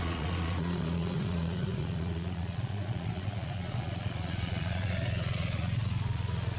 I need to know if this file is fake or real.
fake